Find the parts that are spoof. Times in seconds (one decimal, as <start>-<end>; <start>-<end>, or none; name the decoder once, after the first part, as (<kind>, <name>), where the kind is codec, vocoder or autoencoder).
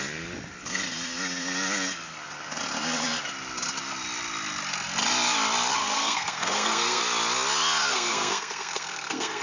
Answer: 5.8-7.0 (codec, SNAC); 7.9-9.4